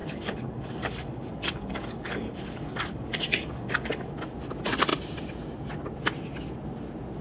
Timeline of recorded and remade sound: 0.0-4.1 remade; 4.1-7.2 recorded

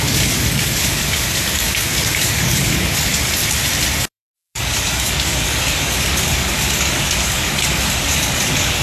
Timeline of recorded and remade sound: 0.0-3.4 remade; 3.4-4.0 recorded; 4.0-8.8 remade

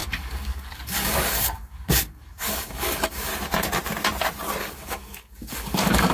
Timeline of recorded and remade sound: 0.0-3.3 remade; 3.3-4.6 recorded; 4.6-6.1 remade

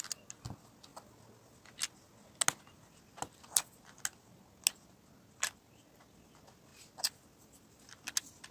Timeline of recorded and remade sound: 0.0-8.5 recorded

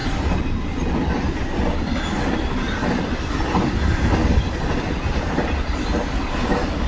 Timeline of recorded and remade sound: 0.0-6.9 recorded

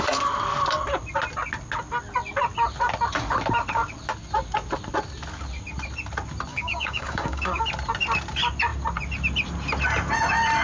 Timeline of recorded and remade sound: 0.0-6.5 recorded; 6.5-7.6 remade; 7.6-10.6 recorded

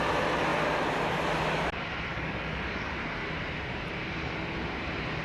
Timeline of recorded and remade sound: 0.0-2.1 recorded; 2.1-3.0 remade; 3.0-5.2 recorded

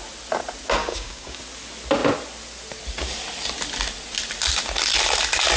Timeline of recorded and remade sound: 0.0-0.8 recorded; 0.8-1.4 remade; 1.4-5.6 recorded